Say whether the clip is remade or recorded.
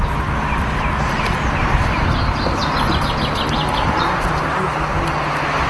recorded